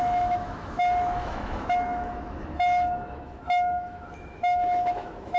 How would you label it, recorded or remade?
remade